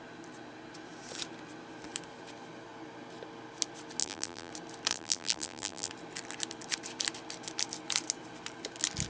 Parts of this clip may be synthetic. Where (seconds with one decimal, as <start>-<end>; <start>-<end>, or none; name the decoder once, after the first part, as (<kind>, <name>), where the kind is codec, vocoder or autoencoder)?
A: 4.0-4.5 (vocoder, BigVGAN v2); 4.9-5.9